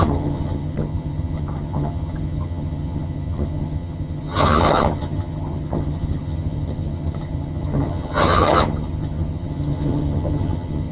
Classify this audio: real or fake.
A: fake